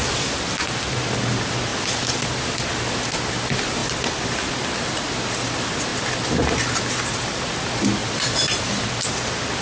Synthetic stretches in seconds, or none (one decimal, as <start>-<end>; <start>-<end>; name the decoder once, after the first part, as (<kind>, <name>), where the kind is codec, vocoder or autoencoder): 3.8-5.0 (vocoder, BigVGAN v2); 5.9-7.4; 8.0-8.6